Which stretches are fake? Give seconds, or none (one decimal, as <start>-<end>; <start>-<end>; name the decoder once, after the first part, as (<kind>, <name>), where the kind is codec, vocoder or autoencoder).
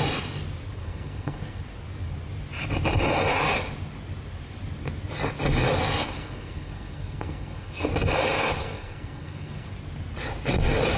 0.8-1.6 (codec, SNAC); 6.0-7.9; 8.6-9.7